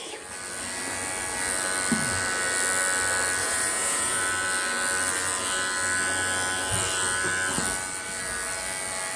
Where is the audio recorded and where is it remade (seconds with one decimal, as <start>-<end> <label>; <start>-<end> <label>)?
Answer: 0.0-3.4 recorded; 3.4-4.2 remade; 4.2-9.2 recorded